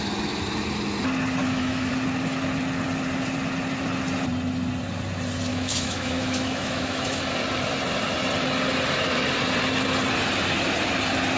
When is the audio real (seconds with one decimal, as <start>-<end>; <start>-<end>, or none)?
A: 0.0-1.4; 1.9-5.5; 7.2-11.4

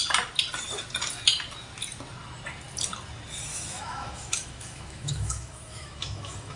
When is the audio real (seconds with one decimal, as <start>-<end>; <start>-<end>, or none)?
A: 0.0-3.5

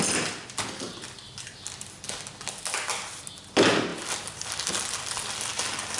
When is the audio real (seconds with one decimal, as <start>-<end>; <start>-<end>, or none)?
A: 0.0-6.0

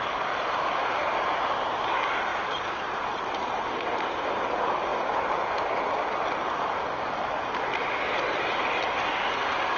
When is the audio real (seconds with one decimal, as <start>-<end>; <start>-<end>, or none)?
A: 0.0-2.3; 3.7-9.8